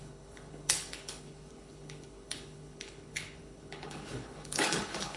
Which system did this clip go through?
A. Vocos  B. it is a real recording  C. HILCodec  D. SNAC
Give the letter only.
C